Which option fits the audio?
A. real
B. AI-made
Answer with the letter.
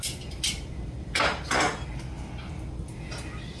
A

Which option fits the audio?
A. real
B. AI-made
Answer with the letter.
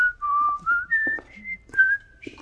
B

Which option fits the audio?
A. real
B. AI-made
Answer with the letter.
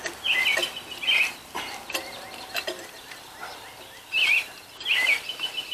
A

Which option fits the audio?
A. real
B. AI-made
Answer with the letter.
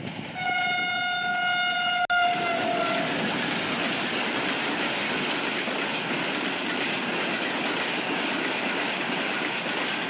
A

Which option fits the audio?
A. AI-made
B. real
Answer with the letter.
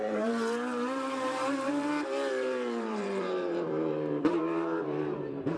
A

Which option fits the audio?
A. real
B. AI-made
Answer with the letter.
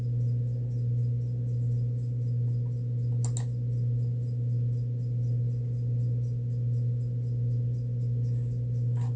A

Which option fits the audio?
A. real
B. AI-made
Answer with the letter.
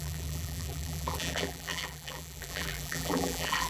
B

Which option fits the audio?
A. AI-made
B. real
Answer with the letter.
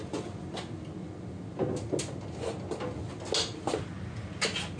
B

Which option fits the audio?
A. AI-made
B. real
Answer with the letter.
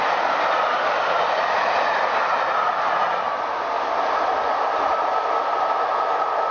B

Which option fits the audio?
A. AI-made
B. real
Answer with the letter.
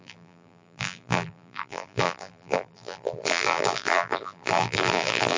A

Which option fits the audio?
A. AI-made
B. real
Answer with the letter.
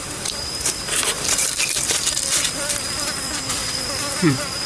A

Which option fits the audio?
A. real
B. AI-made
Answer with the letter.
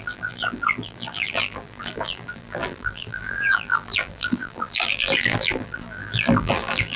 B